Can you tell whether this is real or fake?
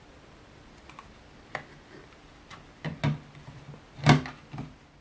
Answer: real